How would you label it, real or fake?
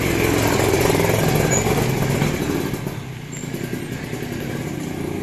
real